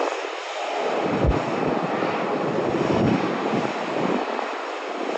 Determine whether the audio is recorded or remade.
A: recorded